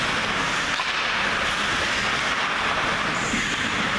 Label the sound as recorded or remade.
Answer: recorded